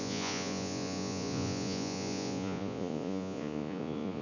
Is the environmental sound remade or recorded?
remade